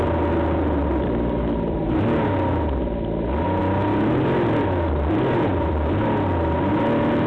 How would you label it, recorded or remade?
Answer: recorded